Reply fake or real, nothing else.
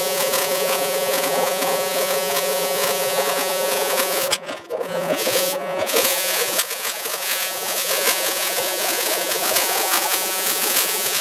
fake